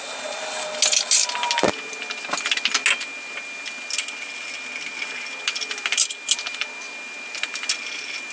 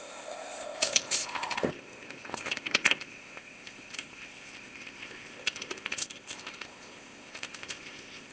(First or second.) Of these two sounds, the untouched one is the first